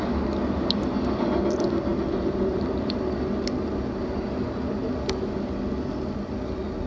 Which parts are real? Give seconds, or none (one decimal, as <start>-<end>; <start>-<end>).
0.0-6.9